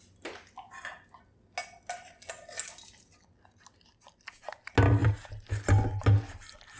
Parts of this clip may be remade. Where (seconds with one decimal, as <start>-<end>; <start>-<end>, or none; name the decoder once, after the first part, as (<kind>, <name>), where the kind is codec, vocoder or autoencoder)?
none